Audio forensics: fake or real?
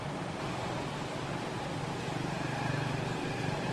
real